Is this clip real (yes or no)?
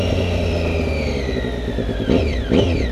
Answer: yes